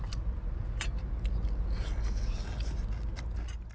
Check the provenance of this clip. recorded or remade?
recorded